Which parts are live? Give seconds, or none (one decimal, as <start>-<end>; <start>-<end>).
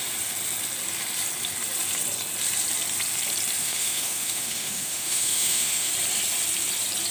0.0-3.6; 5.9-7.1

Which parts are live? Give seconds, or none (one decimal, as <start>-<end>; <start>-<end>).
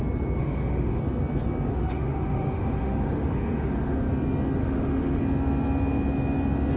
0.0-0.4; 1.0-1.7; 4.1-4.6; 5.2-6.8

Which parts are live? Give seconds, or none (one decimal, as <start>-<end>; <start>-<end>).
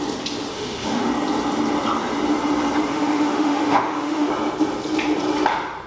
0.0-0.5; 1.1-2.9; 4.3-5.9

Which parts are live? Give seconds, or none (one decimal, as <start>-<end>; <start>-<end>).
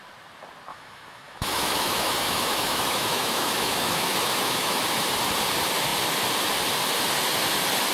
0.0-0.7; 4.8-7.9